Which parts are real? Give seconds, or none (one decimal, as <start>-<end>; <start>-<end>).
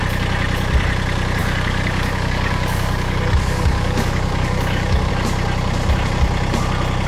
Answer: 0.0-1.4; 5.1-7.1